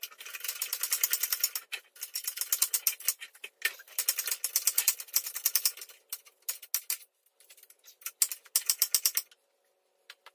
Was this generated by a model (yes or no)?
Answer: no